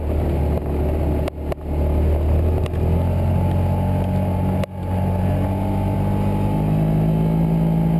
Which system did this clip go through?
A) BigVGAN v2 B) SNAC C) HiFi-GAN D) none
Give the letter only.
D